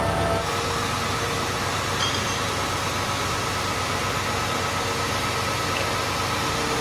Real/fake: real